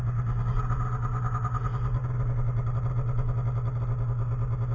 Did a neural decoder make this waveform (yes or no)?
no